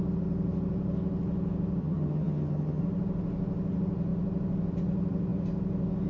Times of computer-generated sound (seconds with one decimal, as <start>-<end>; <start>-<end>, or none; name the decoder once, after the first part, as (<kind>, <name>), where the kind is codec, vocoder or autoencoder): 1.8-2.8 (vocoder, HiFi-GAN)